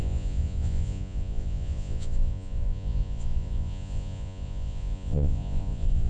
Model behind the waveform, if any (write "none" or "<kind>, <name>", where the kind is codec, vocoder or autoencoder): vocoder, Vocos